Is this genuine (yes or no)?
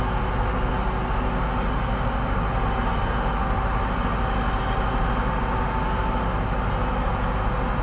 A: yes